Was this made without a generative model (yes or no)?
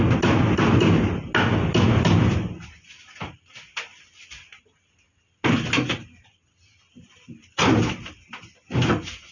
yes